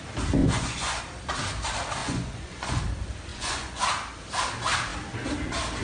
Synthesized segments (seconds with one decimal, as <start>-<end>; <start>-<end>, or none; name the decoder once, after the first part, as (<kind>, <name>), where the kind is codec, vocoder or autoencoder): 0.4-1.0 (vocoder, Vocos); 2.0-2.8; 3.3-3.8